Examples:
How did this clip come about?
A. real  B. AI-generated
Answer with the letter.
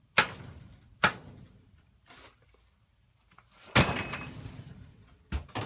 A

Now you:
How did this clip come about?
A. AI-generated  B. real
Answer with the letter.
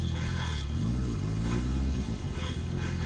A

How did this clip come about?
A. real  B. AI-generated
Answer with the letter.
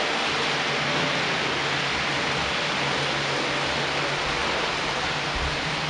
A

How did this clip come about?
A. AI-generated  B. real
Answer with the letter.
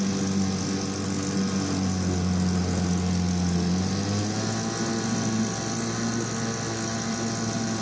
B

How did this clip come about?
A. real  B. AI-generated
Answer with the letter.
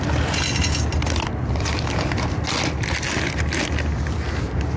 A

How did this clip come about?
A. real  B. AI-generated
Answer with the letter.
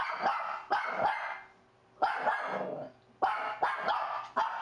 A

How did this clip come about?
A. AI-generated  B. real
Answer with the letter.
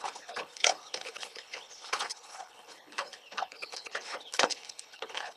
A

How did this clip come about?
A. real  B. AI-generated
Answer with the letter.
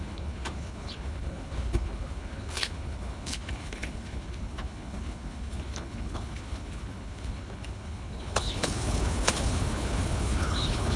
B